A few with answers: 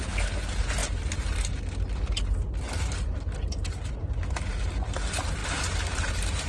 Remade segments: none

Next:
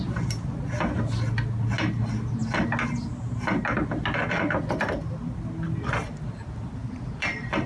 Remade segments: 6.8-7.7 (vocoder, BigVGAN v2)

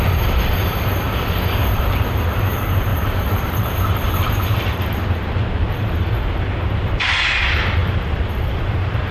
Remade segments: 0.0-9.1 (vocoder, BigVGAN v2)

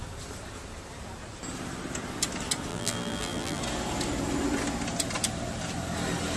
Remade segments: 2.7-3.6 (vocoder, BigVGAN v2)